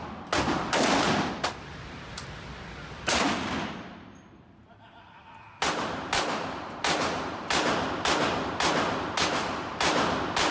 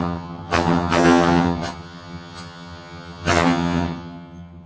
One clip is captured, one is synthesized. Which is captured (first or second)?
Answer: first